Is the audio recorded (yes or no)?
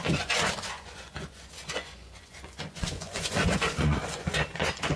no